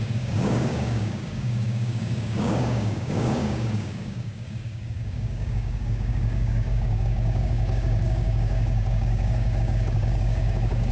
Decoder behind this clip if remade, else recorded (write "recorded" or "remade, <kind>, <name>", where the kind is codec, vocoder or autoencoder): remade, codec, DAC